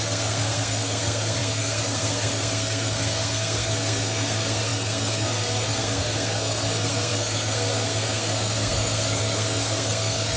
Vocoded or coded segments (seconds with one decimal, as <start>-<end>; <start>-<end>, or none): 0.0-10.4